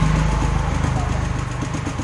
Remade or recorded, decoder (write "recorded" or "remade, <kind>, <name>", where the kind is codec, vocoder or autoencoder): recorded